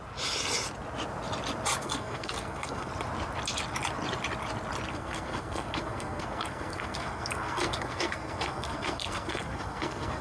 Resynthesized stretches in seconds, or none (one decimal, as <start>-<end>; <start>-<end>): 1.8-2.9; 4.9-10.2